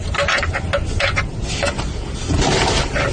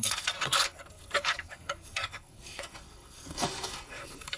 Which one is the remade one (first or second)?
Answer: second